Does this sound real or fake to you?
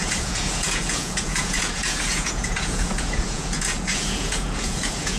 fake